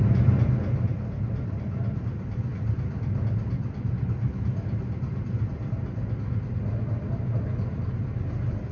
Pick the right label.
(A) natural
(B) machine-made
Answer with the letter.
A